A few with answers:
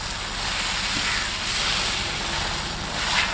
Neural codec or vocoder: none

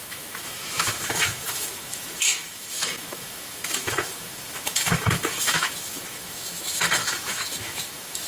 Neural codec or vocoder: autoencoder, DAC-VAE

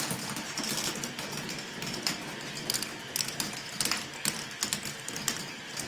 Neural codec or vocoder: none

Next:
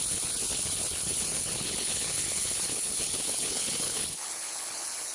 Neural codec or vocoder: codec, HILCodec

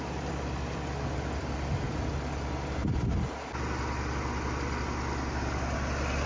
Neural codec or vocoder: none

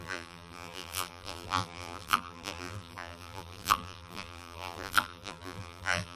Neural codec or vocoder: vocoder, BigVGAN v2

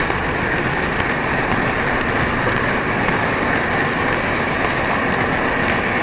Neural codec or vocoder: none